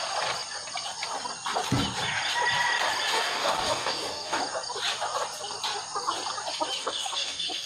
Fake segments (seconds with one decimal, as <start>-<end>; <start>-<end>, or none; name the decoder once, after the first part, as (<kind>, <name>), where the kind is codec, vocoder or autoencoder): 3.1-4.4 (codec, DAC); 6.8-7.7